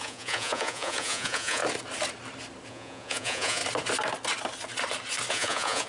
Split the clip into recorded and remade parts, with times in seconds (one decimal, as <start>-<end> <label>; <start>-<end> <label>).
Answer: 0.0-1.6 remade; 1.6-2.7 recorded; 2.7-3.6 remade; 3.6-5.3 recorded; 5.3-5.9 remade